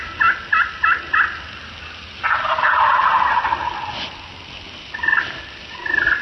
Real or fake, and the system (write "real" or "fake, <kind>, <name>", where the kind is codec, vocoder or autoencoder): real